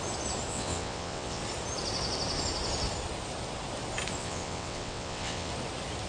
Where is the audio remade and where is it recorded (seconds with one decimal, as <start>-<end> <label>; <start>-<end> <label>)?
0.0-0.5 recorded; 0.5-1.4 remade; 1.4-4.2 recorded; 4.2-5.5 remade; 5.5-6.1 recorded

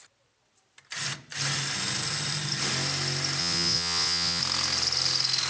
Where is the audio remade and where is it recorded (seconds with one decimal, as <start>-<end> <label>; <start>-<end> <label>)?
0.0-3.4 recorded; 3.4-4.4 remade; 4.4-5.5 recorded

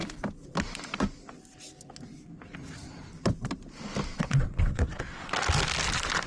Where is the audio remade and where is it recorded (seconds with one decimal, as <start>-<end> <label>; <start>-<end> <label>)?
0.0-4.1 recorded; 4.1-5.3 remade; 5.3-6.3 recorded

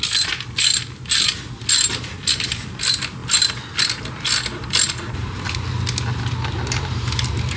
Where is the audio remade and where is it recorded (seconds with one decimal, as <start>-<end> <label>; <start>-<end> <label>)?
0.0-7.6 recorded

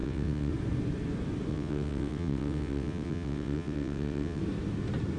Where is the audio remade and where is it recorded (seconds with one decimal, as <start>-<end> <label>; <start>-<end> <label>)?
0.0-0.5 remade; 0.5-1.5 recorded; 1.5-4.4 remade; 4.4-5.2 recorded

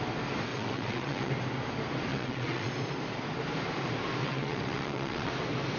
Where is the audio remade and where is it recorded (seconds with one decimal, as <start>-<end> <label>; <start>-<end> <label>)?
0.0-0.5 recorded; 0.5-1.3 remade; 1.3-2.1 recorded; 2.1-2.7 remade; 2.7-4.2 recorded; 4.2-5.3 remade; 5.3-5.8 recorded

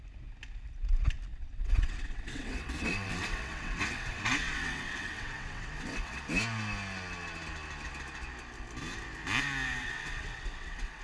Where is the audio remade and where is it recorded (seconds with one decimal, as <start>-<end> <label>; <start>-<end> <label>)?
0.0-1.3 recorded; 1.3-6.2 remade; 6.2-9.8 recorded; 9.8-11.0 remade